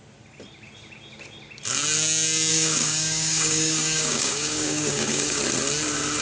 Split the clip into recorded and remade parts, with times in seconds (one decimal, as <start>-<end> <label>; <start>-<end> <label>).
0.0-2.5 recorded; 2.5-5.4 remade; 5.4-6.2 recorded